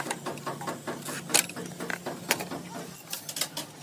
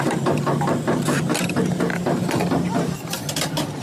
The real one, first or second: first